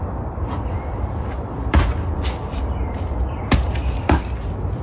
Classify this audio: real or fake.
real